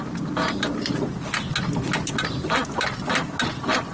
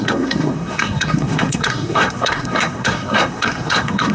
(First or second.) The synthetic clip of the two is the second